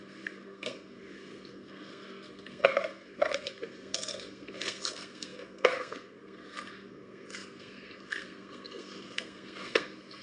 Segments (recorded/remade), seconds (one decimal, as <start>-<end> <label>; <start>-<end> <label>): 0.0-10.2 remade